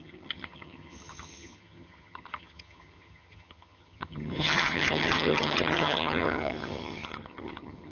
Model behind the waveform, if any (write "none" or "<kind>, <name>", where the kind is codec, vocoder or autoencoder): vocoder, HiFi-GAN